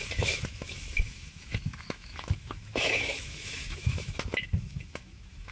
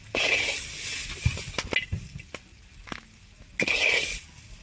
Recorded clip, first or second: second